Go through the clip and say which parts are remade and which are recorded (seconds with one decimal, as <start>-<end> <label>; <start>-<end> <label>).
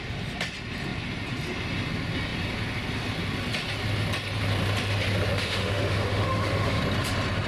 0.0-5.3 recorded; 5.3-6.8 remade; 6.8-7.5 recorded